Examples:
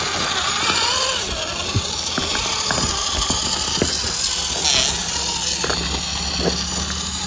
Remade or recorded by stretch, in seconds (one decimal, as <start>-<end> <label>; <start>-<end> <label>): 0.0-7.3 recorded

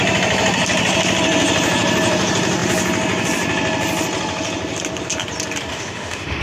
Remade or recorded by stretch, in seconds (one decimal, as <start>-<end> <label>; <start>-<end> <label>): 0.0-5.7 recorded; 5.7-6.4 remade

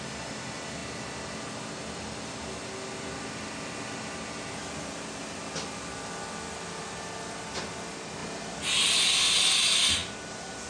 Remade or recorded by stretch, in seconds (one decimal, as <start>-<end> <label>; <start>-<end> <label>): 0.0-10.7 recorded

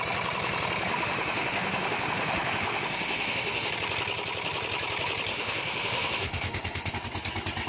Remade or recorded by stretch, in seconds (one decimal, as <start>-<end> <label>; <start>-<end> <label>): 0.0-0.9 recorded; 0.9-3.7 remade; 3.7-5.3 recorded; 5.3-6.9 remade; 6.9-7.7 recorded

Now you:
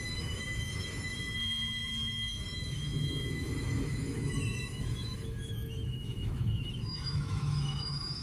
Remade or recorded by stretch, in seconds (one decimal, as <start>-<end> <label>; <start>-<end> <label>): 0.0-8.2 remade